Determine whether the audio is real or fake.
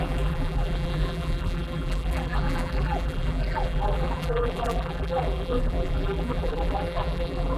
fake